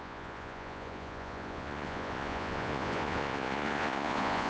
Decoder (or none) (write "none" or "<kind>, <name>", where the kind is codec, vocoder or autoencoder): vocoder, Vocos